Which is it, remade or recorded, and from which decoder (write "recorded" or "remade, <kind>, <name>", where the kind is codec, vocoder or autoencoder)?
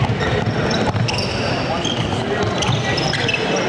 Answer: recorded